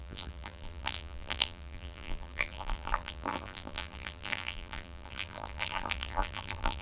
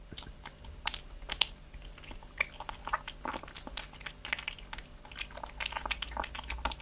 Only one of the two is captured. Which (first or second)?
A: second